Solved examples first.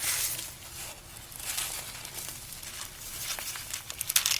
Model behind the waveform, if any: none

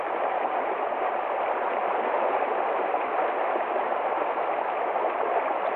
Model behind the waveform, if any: none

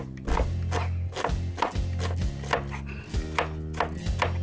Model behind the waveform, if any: none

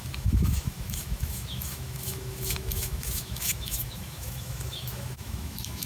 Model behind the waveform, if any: autoencoder, DAC-VAE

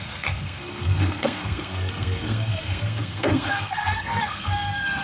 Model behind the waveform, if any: codec, SNAC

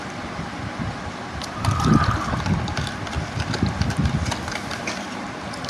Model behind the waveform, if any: none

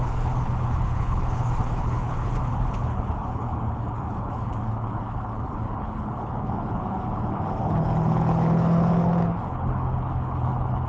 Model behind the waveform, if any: codec, HILCodec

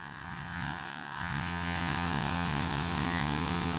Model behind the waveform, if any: vocoder, WaveNeXt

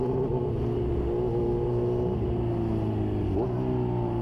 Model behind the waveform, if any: none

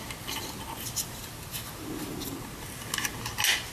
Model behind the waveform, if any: none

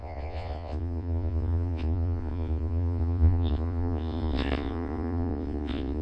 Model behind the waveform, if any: vocoder, Vocos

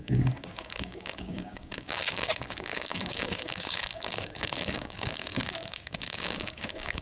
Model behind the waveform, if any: codec, DAC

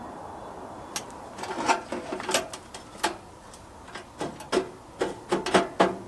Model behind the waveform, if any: none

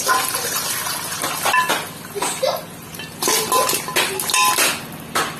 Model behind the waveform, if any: none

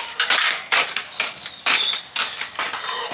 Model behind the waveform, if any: none